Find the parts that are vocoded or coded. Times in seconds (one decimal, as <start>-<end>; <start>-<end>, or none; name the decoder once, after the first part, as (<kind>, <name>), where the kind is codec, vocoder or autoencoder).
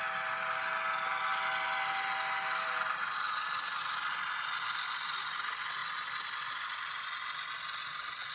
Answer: none